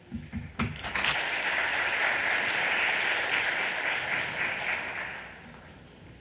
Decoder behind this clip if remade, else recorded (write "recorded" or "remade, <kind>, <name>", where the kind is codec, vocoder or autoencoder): recorded